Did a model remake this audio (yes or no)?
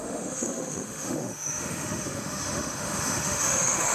yes